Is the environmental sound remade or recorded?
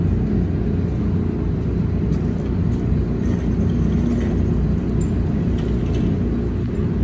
recorded